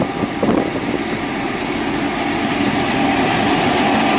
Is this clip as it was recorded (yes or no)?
yes